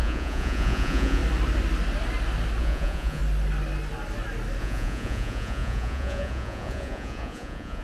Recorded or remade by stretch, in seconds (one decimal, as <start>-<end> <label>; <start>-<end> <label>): 0.0-1.2 remade; 1.2-2.6 recorded; 2.6-3.2 remade; 3.2-4.6 recorded; 4.6-7.8 remade